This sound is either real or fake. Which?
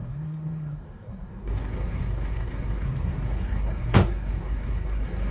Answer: fake